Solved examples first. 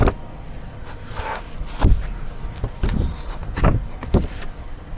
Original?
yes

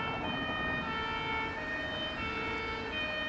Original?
yes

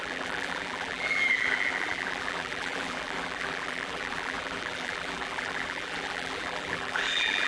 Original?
no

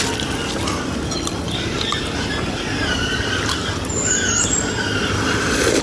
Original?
yes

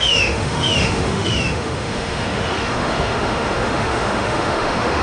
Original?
no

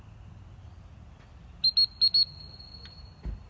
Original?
yes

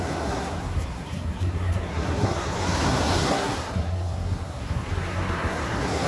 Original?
no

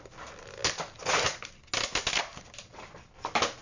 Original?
yes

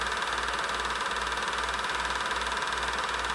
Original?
yes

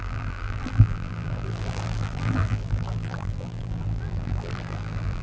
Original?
no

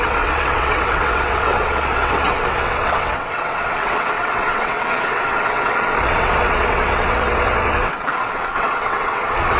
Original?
no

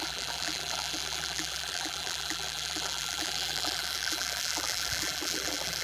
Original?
no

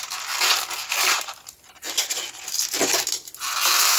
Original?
yes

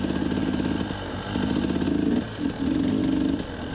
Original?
yes